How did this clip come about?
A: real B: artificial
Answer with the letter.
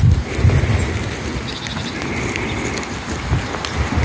A